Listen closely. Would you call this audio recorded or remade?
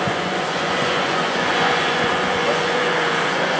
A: remade